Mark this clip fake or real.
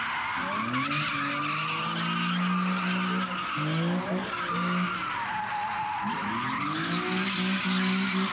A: real